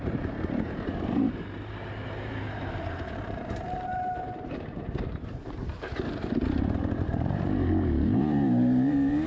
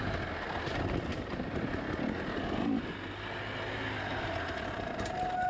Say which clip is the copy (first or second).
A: first